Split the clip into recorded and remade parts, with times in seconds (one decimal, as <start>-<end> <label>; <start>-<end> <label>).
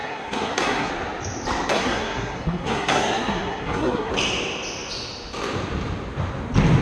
0.0-0.9 remade; 0.9-1.7 recorded; 1.7-4.1 remade; 4.1-6.8 recorded